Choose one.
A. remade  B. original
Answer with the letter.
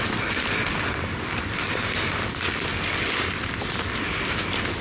B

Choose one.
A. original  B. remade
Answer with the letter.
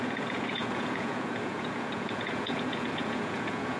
B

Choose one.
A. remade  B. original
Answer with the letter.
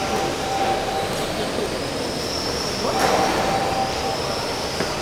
B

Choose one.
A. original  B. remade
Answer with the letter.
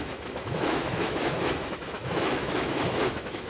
B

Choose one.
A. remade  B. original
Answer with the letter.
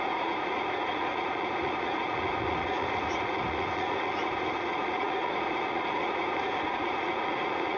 A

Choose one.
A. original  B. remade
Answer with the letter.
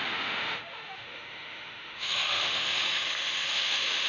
B